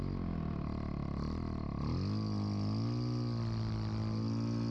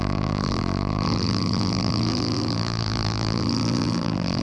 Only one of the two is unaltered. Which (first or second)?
first